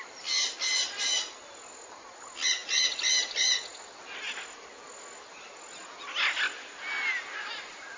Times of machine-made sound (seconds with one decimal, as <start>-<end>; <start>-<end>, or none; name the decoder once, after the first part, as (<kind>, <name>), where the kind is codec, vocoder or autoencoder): 7.1-8.0 (vocoder, BigVGAN v2)